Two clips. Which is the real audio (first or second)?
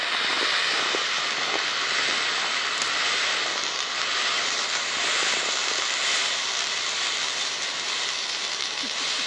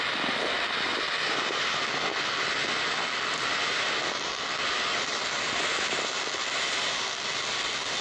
second